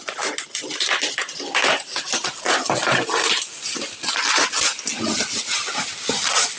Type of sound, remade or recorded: recorded